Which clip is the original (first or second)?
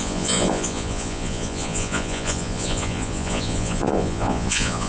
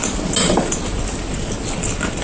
second